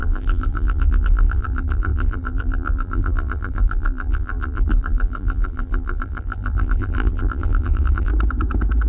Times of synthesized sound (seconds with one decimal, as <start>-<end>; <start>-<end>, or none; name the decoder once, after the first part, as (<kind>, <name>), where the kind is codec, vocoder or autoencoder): 0.0-8.1 (vocoder, BigVGAN v2)